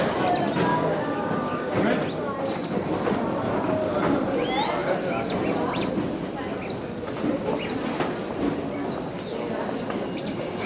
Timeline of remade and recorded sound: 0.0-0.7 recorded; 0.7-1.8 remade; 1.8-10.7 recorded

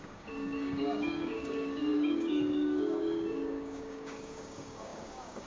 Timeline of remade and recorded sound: 0.0-5.5 remade

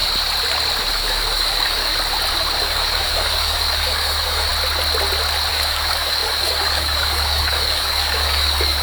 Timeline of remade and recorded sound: 0.0-0.9 recorded; 0.9-1.9 remade; 1.9-2.6 recorded; 2.6-4.5 remade; 4.5-5.5 recorded; 5.5-8.8 remade

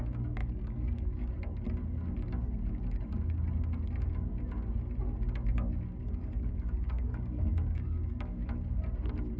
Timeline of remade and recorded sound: 0.0-0.4 recorded; 0.4-1.3 remade; 1.3-6.0 recorded; 6.0-8.5 remade; 8.5-9.4 recorded

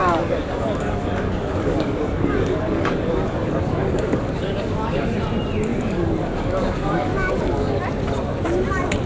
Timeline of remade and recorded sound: 0.0-5.2 remade; 5.2-5.7 recorded; 5.7-7.8 remade; 7.8-9.1 recorded

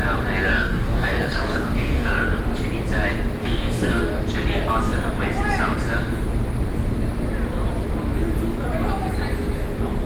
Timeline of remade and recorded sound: 0.0-0.5 recorded; 0.5-2.4 remade; 2.4-3.4 recorded; 3.4-4.2 remade; 4.2-10.1 recorded

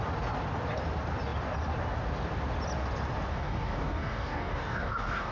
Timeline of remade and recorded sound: 0.0-3.3 recorded; 3.3-5.3 remade

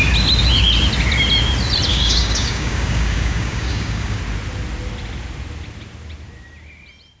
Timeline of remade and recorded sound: 0.0-1.9 recorded; 1.9-4.2 remade; 4.2-7.2 recorded